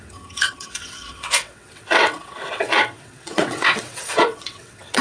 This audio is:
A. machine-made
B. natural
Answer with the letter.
A